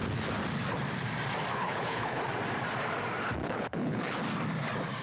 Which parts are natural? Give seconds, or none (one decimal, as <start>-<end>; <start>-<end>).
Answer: 0.0-1.5; 2.2-3.4; 4.2-5.0